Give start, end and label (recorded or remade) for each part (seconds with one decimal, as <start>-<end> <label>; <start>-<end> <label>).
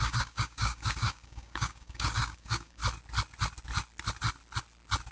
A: 0.0-2.8 remade; 2.8-5.1 recorded